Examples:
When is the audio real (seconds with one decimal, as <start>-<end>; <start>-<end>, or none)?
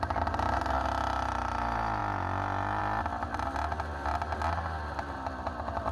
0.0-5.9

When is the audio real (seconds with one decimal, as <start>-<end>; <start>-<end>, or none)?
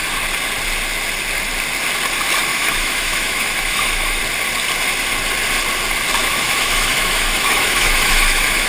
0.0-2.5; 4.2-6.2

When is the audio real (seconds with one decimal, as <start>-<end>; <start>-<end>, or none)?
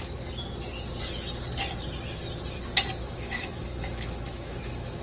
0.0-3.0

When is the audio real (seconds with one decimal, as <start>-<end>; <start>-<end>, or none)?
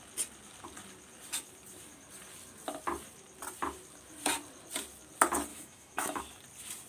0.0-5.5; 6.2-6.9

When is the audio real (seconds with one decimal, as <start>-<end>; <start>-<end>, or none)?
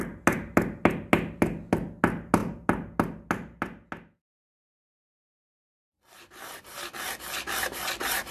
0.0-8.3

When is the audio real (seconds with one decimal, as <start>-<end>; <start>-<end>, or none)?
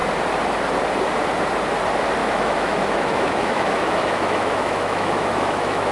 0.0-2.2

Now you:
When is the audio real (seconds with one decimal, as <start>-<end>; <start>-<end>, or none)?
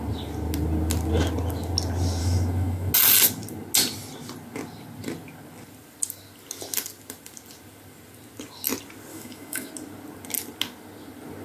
0.0-2.2; 2.9-9.1; 9.7-11.4